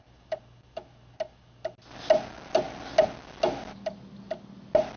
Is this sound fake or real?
real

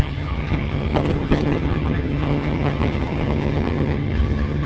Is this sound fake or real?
fake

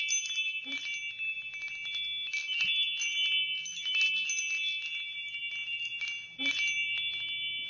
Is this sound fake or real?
real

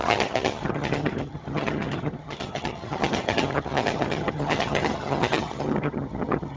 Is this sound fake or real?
fake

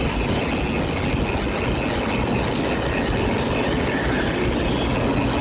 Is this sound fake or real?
real